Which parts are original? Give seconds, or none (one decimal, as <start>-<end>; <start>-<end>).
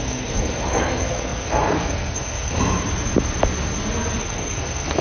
2.6-4.2